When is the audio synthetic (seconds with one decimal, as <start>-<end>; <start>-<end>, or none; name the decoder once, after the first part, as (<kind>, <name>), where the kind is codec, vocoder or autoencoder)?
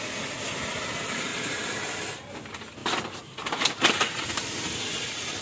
1.3-1.9 (vocoder, BigVGAN v2)